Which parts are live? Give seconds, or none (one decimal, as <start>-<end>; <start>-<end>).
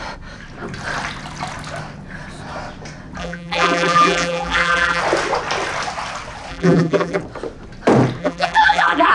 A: 0.0-3.2; 5.0-6.5; 7.2-8.2